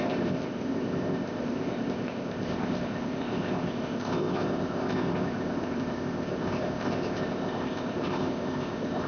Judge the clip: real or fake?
fake